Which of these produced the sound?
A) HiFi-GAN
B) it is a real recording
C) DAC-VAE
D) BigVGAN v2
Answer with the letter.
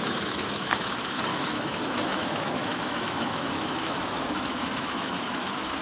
C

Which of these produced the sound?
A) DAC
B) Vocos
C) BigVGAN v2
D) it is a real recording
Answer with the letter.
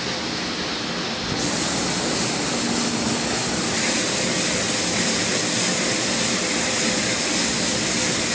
D